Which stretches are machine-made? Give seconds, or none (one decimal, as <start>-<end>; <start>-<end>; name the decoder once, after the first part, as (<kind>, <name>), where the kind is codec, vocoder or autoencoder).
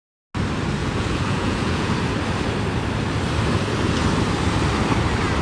0.8-1.9 (vocoder, Vocos)